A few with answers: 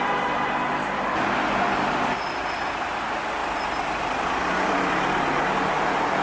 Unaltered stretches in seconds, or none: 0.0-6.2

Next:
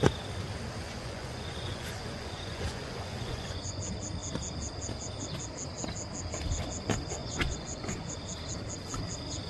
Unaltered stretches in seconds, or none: 0.0-0.8; 3.8-7.2; 8.2-9.5